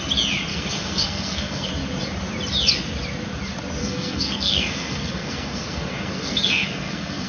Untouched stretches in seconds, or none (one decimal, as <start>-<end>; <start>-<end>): 0.0-0.5; 1.7-3.8